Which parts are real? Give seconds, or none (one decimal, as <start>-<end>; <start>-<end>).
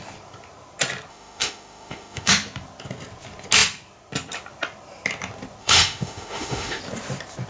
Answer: 0.0-1.1; 2.3-5.6; 6.8-7.5